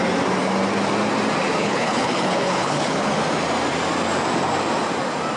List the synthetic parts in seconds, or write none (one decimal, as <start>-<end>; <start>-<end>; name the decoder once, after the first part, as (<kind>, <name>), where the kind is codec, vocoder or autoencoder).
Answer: 1.6-3.1 (codec, HILCodec)

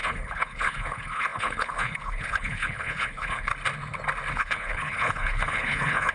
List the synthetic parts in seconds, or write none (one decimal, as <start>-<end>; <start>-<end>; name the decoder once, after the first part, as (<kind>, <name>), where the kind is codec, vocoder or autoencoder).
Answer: 0.0-3.5 (codec, HILCodec); 4.3-6.1

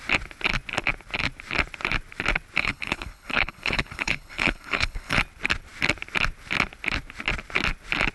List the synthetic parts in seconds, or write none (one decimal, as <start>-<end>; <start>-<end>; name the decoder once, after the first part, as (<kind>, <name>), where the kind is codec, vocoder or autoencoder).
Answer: 2.6-5.2 (codec, HILCodec)

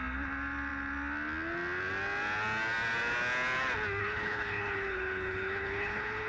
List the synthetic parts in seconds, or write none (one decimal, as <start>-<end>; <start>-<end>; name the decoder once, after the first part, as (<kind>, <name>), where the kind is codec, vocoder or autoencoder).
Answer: 4.0-6.3 (codec, HILCodec)